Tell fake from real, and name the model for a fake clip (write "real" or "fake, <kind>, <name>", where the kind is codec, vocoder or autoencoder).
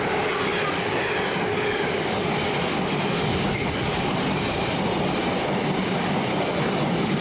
real